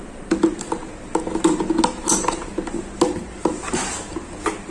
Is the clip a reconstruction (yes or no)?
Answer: no